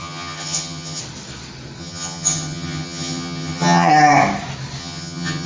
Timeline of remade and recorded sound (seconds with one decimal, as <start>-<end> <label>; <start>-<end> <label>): 0.0-1.0 remade; 1.0-1.8 recorded; 1.8-3.9 remade; 3.9-4.8 recorded; 4.8-5.5 remade